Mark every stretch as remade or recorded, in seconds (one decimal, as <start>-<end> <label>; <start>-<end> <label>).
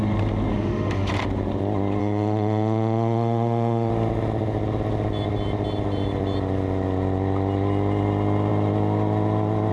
0.0-0.5 recorded; 0.5-1.1 remade; 1.1-2.0 recorded; 2.0-3.9 remade; 3.9-9.7 recorded